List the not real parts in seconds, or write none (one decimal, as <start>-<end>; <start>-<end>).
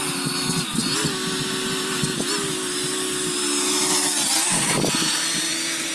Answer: none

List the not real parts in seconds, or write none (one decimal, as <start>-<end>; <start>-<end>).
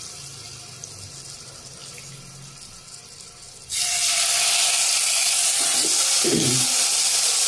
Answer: none